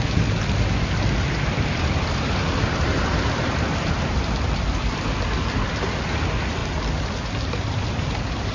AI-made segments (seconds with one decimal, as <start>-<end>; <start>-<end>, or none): 0.0-8.5